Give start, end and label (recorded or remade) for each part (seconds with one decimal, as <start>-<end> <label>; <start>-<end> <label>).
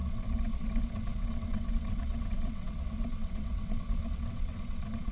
0.0-5.1 remade